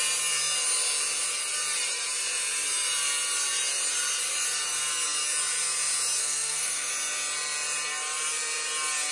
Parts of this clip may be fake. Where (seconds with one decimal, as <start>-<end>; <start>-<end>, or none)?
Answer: 6.2-6.9